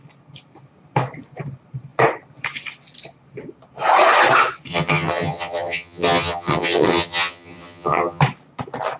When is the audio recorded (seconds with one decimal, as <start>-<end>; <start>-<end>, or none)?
0.0-4.7; 8.2-9.0